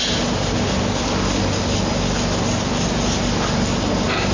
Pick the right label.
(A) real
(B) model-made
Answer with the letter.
A